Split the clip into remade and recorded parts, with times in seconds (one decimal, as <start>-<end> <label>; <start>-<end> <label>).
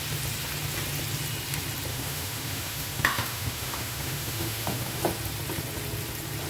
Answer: 0.0-1.9 recorded; 1.9-5.0 remade; 5.0-6.5 recorded